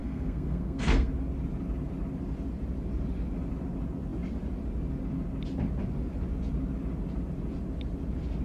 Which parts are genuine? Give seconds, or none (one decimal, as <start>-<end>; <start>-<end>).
1.1-8.4